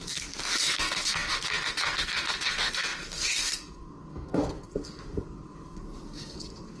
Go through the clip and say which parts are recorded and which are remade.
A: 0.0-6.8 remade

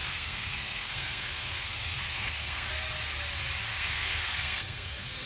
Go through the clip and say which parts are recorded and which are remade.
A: 0.0-2.7 remade; 2.7-3.7 recorded; 3.7-5.3 remade

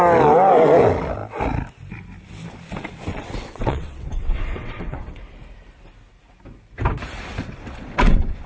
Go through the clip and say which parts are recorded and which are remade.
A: 0.0-3.1 recorded; 3.1-5.2 remade; 5.2-7.4 recorded; 7.4-8.5 remade

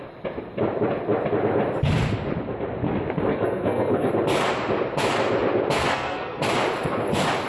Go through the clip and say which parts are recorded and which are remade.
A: 0.0-3.3 recorded; 3.3-4.1 remade; 4.1-5.8 recorded; 5.8-6.4 remade; 6.4-7.5 recorded

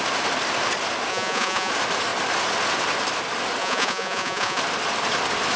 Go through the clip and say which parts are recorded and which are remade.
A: 0.0-1.1 recorded; 1.1-1.7 remade; 1.7-3.6 recorded; 3.6-4.6 remade; 4.6-5.6 recorded